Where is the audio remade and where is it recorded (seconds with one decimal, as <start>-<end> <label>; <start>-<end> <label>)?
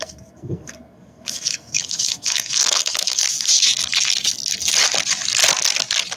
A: 0.0-3.2 remade; 3.2-6.2 recorded